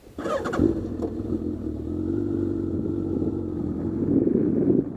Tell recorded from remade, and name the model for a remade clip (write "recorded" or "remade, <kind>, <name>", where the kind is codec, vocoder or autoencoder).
remade, vocoder, BigVGAN v2